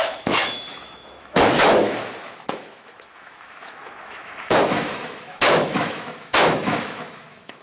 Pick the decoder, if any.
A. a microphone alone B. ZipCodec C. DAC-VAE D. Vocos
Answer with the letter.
C